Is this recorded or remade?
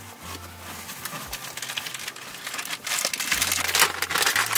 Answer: recorded